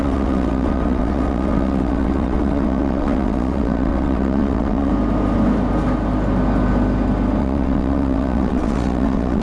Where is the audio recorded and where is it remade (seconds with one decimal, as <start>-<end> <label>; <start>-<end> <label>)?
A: 0.0-4.9 remade; 4.9-7.4 recorded; 7.4-9.4 remade